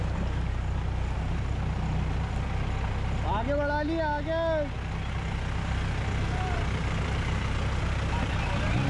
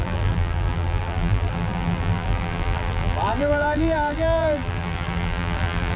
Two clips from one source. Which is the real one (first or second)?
first